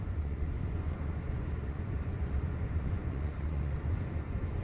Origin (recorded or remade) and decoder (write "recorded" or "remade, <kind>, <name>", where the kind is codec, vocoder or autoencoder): remade, vocoder, Vocos